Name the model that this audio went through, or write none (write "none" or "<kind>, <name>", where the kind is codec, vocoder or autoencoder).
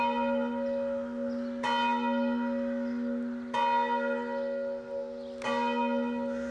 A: none